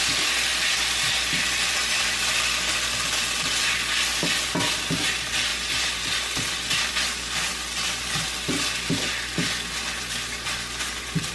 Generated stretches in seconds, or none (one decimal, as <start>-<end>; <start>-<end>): none